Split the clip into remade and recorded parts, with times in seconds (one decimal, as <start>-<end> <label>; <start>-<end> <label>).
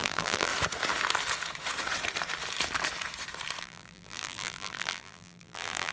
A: 0.0-0.5 remade; 0.5-3.6 recorded; 3.6-5.9 remade